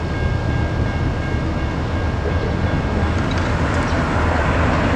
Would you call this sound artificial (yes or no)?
no